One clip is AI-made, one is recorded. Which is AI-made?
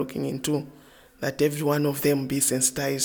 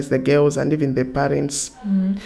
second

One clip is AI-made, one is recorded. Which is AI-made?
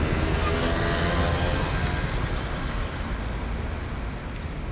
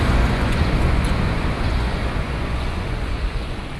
second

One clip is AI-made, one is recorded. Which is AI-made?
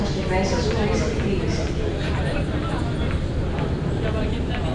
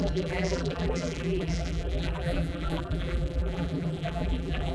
second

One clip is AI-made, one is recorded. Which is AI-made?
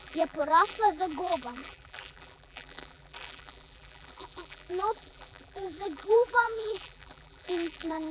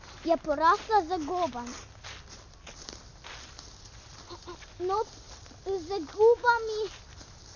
first